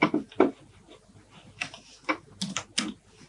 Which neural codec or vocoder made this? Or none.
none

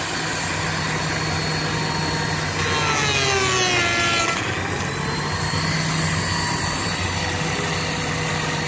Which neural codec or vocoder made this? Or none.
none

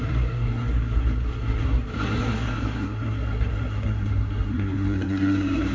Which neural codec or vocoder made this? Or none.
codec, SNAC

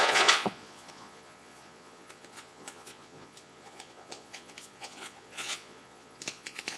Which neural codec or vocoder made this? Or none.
vocoder, Vocos